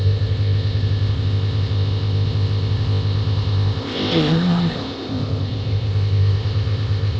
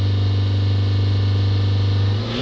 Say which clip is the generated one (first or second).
first